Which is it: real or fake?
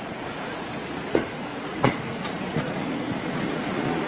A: fake